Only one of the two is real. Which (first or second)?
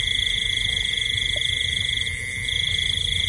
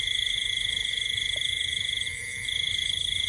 first